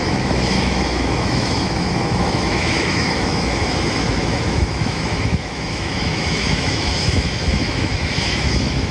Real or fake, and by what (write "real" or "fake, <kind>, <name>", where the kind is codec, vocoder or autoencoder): fake, autoencoder, DAC-VAE